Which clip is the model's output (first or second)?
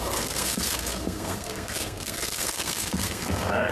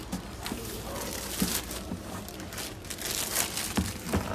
first